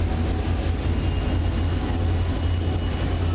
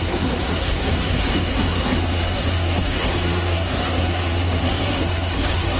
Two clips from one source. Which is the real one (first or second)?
first